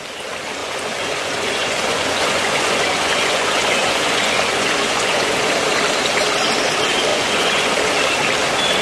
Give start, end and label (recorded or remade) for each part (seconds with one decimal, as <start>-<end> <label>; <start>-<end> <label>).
0.0-0.6 recorded; 0.6-5.5 remade; 5.5-7.1 recorded; 7.1-7.7 remade; 7.7-8.8 recorded